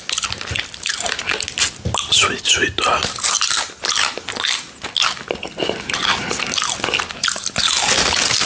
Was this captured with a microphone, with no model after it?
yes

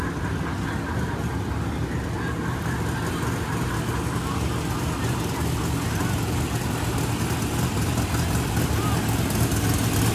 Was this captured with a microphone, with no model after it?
yes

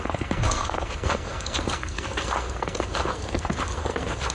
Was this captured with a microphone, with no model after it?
no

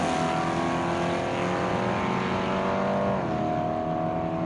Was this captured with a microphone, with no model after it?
yes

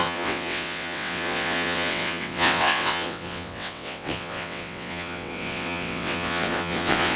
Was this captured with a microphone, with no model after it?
no